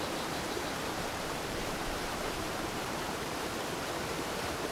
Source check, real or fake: fake